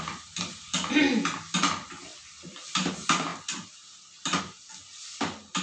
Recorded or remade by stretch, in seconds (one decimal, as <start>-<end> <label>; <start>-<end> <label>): 0.0-5.6 recorded